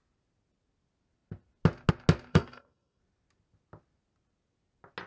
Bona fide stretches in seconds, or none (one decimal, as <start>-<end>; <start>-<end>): 0.0-2.3; 3.0-5.1

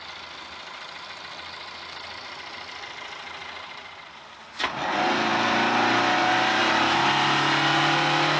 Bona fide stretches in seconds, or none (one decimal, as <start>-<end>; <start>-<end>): 0.0-8.4